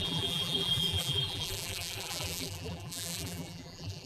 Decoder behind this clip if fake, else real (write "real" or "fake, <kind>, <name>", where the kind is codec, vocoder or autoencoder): fake, vocoder, BigVGAN v2